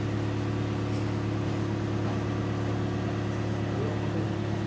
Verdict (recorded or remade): recorded